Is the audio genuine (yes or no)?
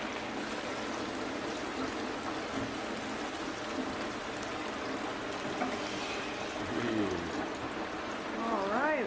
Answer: yes